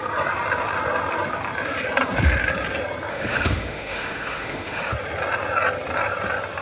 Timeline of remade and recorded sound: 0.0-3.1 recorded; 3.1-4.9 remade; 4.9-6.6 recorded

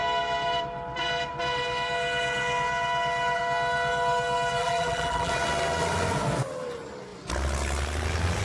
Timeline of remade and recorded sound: 0.0-4.6 recorded; 4.6-5.3 remade; 5.3-8.4 recorded

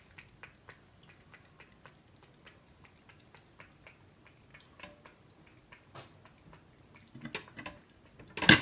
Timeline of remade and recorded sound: 0.0-8.6 recorded

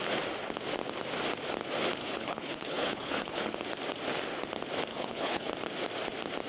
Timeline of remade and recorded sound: 0.0-2.0 recorded; 2.0-3.5 remade; 3.5-4.9 recorded; 4.9-5.5 remade; 5.5-6.5 recorded

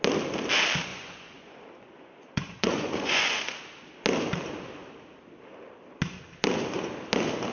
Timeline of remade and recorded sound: 0.0-0.9 recorded; 0.9-3.6 remade; 3.6-7.5 recorded

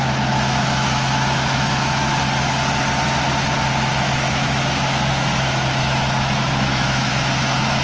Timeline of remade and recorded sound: 0.0-2.1 remade; 2.1-3.9 recorded; 3.9-7.8 remade

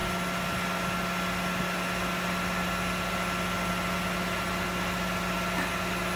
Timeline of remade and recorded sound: 0.0-6.2 recorded

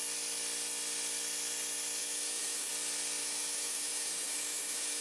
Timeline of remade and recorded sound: 0.0-2.0 recorded; 2.0-2.7 remade; 2.7-3.2 recorded; 3.2-5.0 remade